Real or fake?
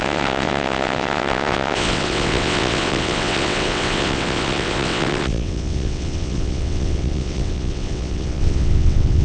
fake